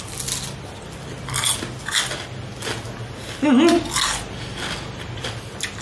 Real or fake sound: real